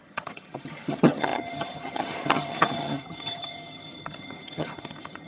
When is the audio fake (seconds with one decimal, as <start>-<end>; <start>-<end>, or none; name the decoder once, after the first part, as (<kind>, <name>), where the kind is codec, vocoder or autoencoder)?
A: 0.0-5.3 (vocoder, HiFi-GAN)